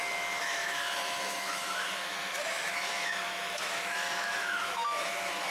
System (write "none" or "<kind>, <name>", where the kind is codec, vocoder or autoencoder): autoencoder, DAC-VAE